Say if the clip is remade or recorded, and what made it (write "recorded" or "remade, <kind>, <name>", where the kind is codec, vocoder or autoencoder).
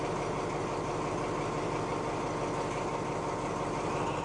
recorded